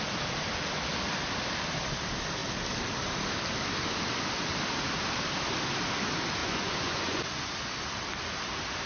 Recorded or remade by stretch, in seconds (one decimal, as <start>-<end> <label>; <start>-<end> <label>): 0.0-6.4 recorded; 6.4-7.2 remade; 7.2-8.9 recorded